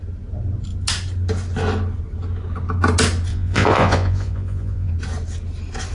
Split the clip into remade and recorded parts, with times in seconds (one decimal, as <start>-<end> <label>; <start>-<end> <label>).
0.0-3.3 recorded; 3.3-4.9 remade; 4.9-5.9 recorded